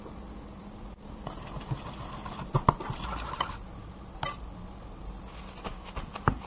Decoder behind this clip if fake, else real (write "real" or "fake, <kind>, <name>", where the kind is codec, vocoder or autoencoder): real